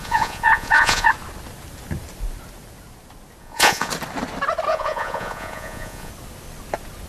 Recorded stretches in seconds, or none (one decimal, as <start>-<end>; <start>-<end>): 1.1-3.4; 3.9-4.7; 6.1-7.1

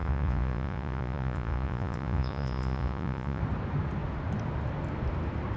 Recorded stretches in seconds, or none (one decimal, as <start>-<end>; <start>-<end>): 3.4-5.6

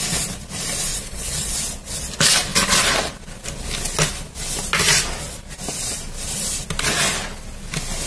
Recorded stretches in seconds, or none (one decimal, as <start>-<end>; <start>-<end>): 0.0-0.9; 1.5-8.1

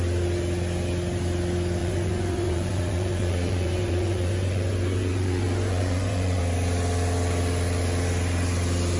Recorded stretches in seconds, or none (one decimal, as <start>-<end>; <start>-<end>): 0.0-1.8; 6.4-9.0

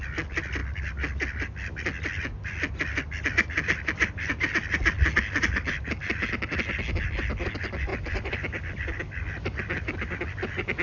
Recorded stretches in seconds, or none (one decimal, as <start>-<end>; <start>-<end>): 0.0-10.8

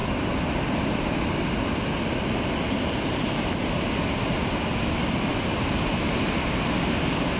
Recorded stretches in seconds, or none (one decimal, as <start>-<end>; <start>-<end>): 0.0-7.4